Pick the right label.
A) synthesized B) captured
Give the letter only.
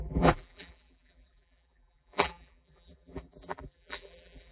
A